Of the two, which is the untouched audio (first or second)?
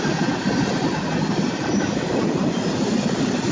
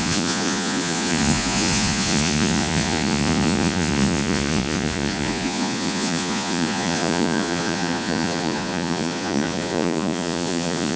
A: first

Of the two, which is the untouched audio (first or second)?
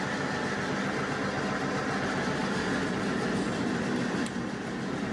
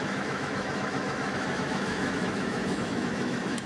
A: first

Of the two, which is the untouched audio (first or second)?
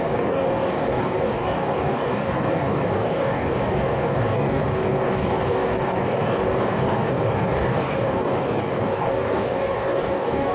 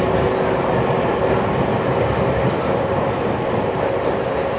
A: second